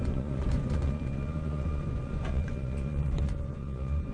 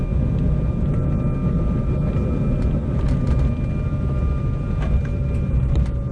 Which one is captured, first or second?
second